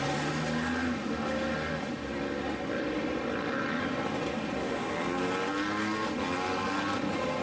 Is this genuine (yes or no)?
yes